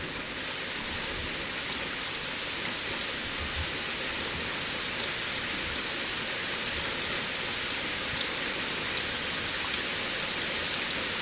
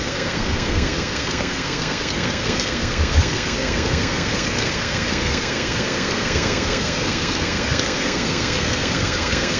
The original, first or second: first